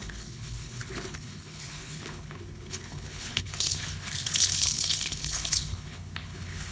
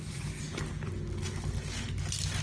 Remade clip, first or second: first